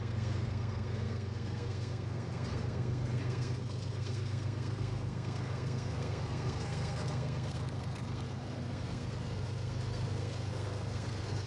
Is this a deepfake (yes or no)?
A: yes